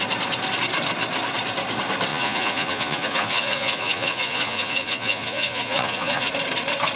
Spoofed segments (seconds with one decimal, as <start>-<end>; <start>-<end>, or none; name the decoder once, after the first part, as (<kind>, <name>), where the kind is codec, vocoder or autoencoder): 2.1-6.3 (vocoder, Vocos)